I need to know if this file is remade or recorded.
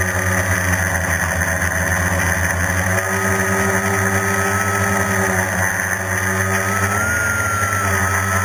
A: recorded